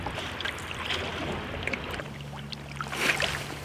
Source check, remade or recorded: recorded